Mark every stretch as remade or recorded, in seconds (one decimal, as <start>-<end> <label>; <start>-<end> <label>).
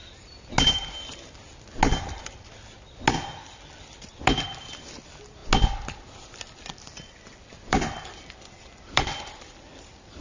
0.0-3.1 recorded; 3.1-5.4 remade; 5.4-6.4 recorded; 6.4-10.2 remade